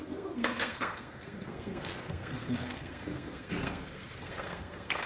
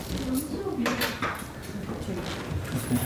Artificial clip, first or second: first